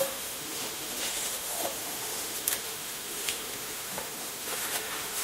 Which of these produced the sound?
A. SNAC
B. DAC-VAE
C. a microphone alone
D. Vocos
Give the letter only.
B